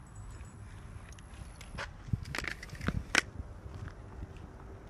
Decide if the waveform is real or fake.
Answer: real